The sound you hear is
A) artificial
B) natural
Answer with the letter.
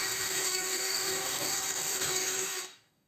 A